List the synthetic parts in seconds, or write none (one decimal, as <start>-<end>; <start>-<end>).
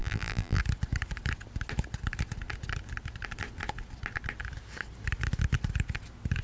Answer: 0.0-0.6